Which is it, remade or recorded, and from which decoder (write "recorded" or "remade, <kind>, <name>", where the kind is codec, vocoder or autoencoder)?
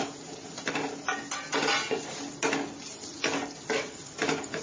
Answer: recorded